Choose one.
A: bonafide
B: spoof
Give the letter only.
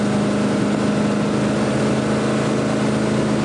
A